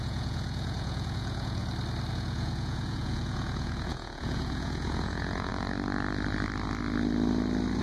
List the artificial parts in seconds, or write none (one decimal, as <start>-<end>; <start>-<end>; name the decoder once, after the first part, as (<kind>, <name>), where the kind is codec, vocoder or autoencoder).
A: 0.0-1.6 (vocoder, Vocos); 2.1-5.5